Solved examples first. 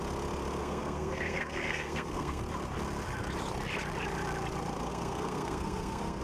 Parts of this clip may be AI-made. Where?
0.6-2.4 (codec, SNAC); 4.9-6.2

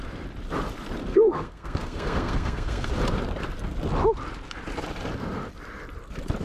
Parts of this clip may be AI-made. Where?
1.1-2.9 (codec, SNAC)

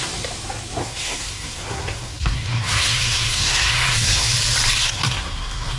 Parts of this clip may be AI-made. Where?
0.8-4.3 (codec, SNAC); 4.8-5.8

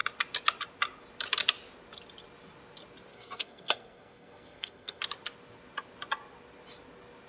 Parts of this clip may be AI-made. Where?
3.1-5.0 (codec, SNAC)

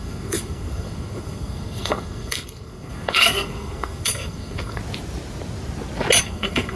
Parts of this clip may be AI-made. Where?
0.0-4.8 (codec, SNAC); 6.2-6.8